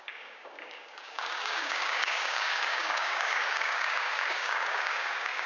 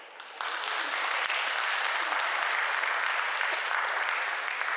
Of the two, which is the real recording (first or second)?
second